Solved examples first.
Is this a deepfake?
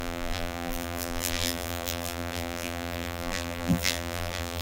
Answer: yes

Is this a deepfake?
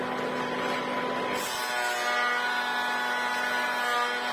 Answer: no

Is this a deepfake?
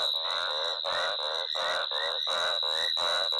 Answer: no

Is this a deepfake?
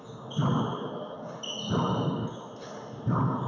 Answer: no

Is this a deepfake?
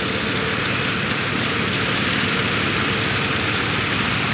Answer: no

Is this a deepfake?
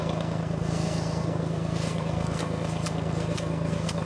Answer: yes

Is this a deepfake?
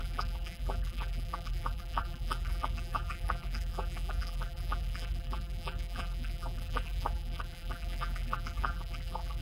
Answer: yes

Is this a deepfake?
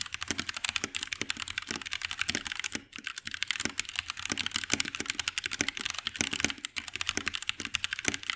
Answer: no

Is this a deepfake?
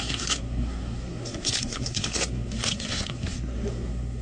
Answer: yes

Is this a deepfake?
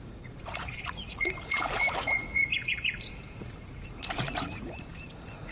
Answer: yes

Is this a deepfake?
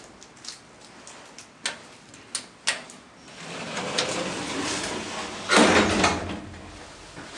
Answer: no